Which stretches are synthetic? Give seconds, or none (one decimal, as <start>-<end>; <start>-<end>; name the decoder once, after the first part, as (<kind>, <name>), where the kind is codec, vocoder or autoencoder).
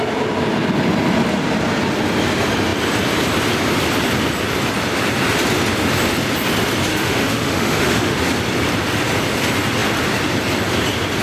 6.9-8.2 (autoencoder, DAC-VAE)